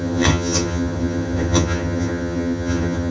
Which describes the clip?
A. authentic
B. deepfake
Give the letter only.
B